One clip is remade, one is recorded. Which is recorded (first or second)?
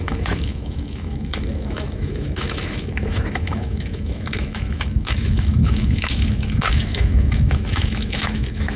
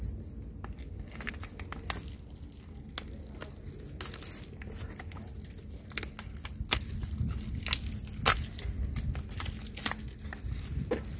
second